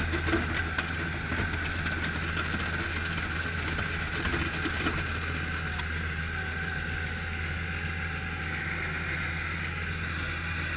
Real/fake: real